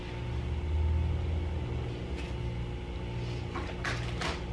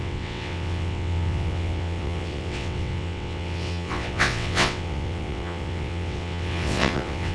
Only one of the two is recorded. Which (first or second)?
first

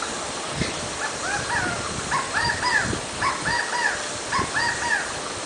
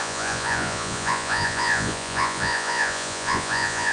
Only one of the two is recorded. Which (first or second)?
first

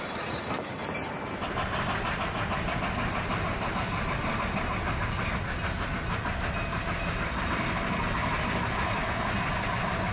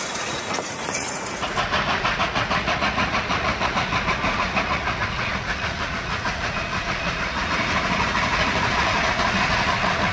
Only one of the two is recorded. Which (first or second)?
first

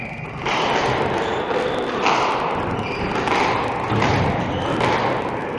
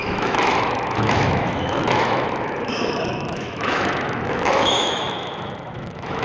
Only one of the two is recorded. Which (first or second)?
first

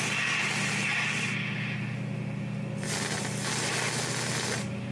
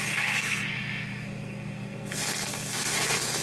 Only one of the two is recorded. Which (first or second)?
first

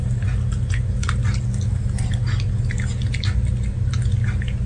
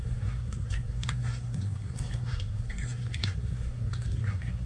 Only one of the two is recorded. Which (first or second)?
first